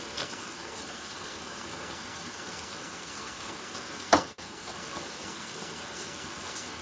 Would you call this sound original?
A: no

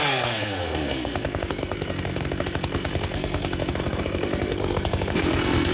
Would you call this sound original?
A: no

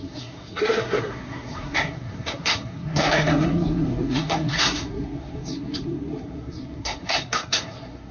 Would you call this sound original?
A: no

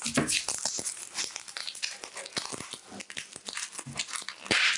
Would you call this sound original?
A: yes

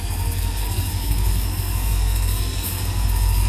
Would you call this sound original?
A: no